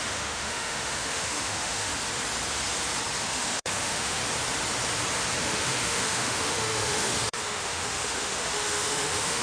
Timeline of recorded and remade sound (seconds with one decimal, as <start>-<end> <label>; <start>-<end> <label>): 0.0-1.9 remade; 1.9-3.2 recorded; 3.2-4.2 remade; 4.2-5.4 recorded; 5.4-9.4 remade